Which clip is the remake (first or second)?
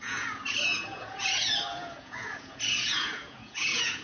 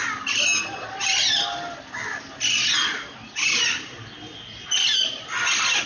first